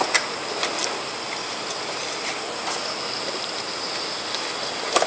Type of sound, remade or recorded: recorded